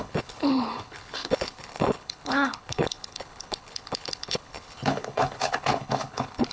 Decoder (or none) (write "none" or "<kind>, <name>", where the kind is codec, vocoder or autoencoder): codec, HILCodec